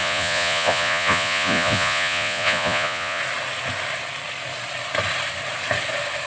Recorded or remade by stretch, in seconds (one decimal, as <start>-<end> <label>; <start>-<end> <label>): 0.0-3.2 remade; 3.2-6.3 recorded